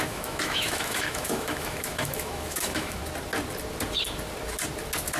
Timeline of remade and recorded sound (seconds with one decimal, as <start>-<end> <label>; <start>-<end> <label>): 0.0-3.0 remade; 3.0-5.2 recorded